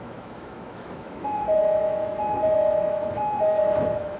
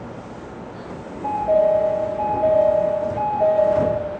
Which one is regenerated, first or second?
first